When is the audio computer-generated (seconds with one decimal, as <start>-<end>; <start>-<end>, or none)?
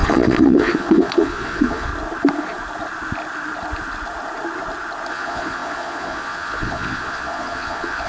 0.0-1.9; 5.1-8.1